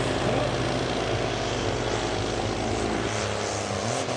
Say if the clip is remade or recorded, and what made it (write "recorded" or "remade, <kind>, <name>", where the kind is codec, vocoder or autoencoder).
recorded